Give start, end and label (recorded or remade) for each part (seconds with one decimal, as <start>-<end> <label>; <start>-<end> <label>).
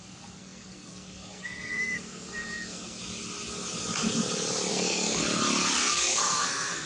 0.0-3.0 remade; 3.0-4.7 recorded; 4.7-5.2 remade; 5.2-5.8 recorded; 5.8-6.9 remade